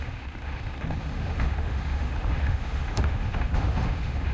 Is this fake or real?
fake